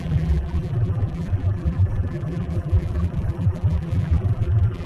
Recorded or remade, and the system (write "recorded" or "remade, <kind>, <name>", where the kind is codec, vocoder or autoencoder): remade, vocoder, BigVGAN v2